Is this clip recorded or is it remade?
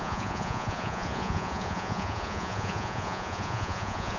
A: remade